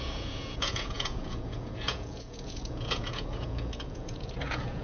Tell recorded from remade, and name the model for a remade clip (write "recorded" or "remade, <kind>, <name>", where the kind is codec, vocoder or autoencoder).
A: remade, vocoder, Vocos